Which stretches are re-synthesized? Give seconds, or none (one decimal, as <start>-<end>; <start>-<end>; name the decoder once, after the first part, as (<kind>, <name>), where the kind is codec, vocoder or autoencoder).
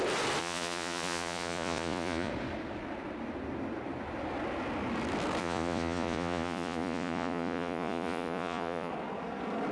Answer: 0.4-2.3 (vocoder, Vocos); 5.4-8.9